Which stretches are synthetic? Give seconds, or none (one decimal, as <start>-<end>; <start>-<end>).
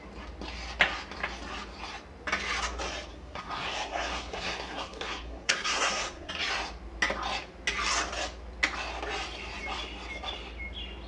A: 3.1-6.3